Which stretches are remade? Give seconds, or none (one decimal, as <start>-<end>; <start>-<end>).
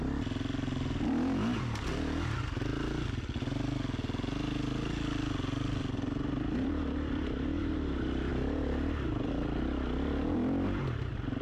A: none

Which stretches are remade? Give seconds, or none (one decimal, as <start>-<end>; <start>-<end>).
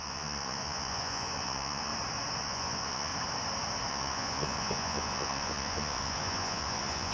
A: 0.0-1.9; 2.4-3.1; 3.9-7.1